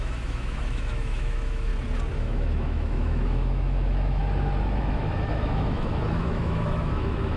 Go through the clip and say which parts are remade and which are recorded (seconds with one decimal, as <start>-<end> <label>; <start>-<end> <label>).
0.0-1.7 remade; 1.7-2.2 recorded; 2.2-4.2 remade; 4.2-4.8 recorded; 4.8-7.4 remade